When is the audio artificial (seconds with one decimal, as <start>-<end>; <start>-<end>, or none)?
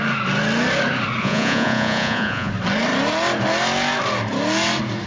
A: 1.2-2.5